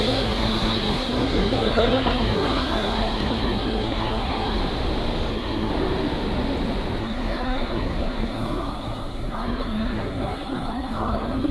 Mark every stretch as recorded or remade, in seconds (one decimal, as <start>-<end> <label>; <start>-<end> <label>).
0.0-4.6 remade; 4.6-5.3 recorded; 5.3-5.7 remade; 5.7-7.0 recorded; 7.0-11.5 remade